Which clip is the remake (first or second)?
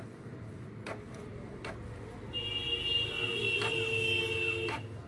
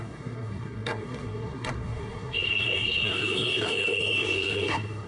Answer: second